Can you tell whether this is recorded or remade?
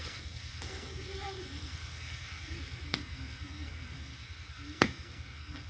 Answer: remade